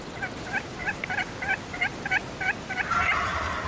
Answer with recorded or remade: recorded